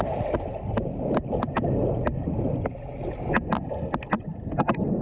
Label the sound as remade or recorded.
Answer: recorded